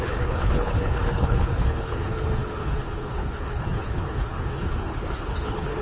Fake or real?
fake